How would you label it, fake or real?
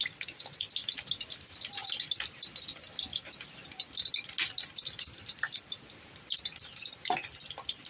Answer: real